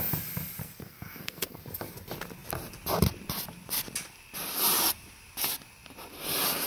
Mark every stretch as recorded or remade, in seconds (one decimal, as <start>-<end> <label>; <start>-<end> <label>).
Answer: 0.0-0.6 recorded; 0.6-1.6 remade; 1.6-6.7 recorded